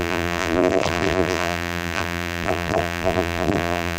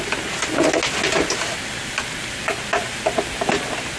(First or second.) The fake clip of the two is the first